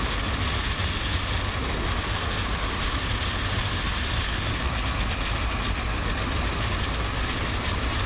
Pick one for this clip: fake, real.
real